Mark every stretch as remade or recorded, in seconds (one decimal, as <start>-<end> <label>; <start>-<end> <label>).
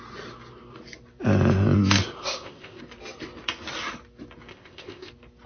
0.0-2.2 recorded; 2.2-2.8 remade; 2.8-4.5 recorded; 4.5-5.1 remade; 5.1-5.5 recorded